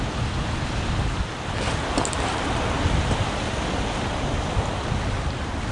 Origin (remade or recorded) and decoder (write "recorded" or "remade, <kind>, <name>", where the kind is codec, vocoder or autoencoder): recorded